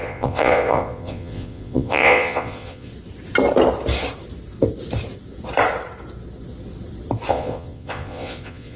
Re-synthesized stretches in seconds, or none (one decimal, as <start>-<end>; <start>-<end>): 0.0-2.9; 7.3-8.8